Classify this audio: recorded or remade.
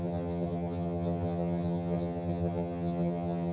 remade